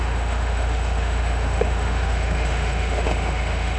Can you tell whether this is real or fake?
fake